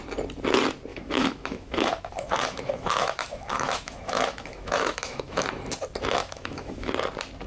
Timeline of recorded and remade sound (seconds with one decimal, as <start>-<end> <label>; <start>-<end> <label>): 0.0-0.9 recorded; 0.9-5.4 remade; 5.4-6.2 recorded; 6.2-6.9 remade; 6.9-7.5 recorded